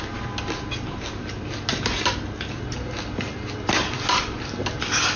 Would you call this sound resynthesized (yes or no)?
no